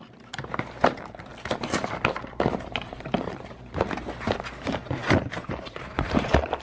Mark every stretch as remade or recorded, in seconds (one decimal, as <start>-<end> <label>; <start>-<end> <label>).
0.0-1.3 remade; 1.3-2.3 recorded; 2.3-6.6 remade